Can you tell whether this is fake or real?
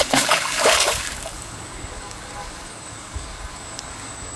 fake